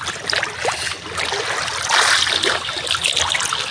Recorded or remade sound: recorded